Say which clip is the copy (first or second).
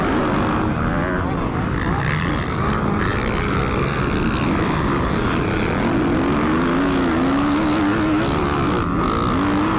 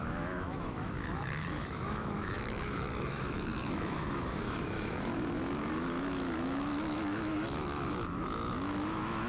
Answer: second